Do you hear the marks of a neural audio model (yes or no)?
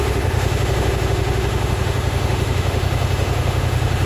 yes